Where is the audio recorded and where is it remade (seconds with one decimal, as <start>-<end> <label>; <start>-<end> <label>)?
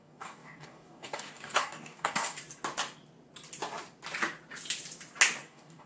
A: 0.0-2.4 remade; 2.4-5.4 recorded; 5.4-5.9 remade